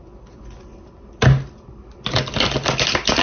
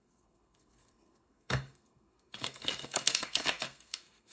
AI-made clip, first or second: second